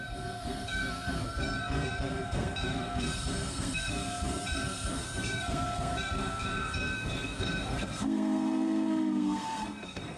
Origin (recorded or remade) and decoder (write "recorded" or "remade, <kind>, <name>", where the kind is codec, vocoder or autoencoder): remade, codec, SNAC